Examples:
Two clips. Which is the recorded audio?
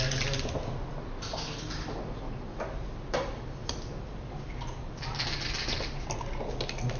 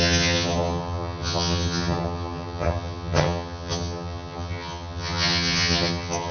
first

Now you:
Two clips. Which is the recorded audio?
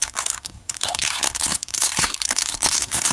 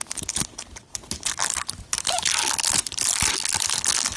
second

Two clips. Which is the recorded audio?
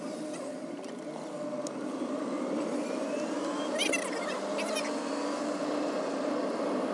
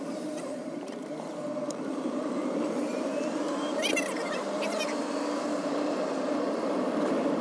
first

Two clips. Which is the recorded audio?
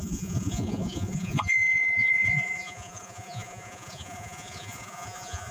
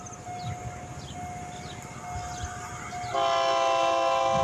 second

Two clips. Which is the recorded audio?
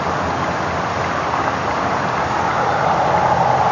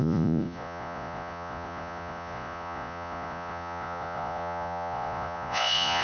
first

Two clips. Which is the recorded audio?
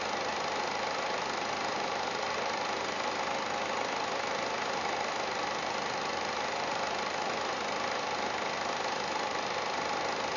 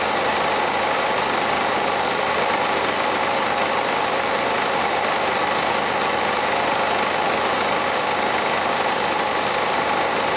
second